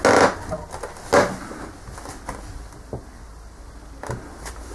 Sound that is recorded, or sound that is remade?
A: recorded